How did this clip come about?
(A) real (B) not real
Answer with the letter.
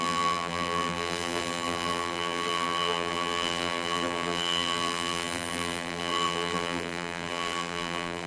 B